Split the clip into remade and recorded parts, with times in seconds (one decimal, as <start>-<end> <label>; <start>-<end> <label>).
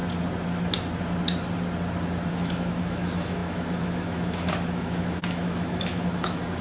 0.0-2.3 recorded; 2.3-6.6 remade